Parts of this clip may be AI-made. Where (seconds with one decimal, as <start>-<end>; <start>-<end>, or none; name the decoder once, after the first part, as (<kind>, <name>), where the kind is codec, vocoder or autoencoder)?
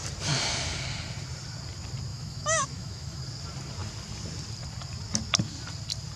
2.1-3.2 (autoencoder, DAC-VAE)